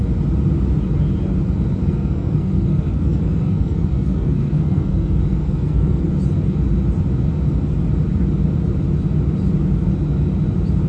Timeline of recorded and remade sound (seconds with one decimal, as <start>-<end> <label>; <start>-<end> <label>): 0.0-1.8 recorded; 1.8-6.1 remade; 6.1-10.9 recorded